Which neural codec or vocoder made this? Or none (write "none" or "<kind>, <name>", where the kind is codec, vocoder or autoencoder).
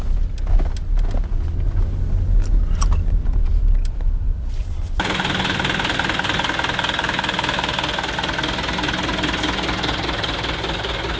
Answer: none